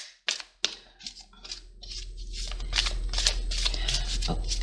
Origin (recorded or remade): recorded